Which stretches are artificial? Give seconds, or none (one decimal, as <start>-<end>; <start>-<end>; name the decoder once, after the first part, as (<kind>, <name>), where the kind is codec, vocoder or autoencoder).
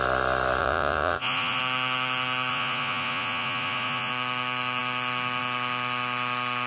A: 0.6-1.6 (vocoder, Vocos); 2.5-4.1